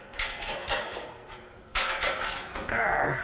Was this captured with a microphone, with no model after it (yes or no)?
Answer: no